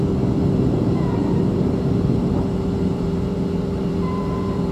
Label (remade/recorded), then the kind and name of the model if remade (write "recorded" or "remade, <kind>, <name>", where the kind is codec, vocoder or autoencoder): remade, vocoder, BigVGAN v2